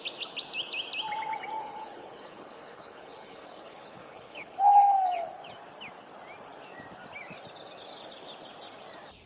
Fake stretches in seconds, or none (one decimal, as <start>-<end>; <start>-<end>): 1.6-5.4